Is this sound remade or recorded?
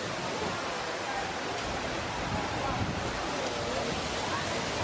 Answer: recorded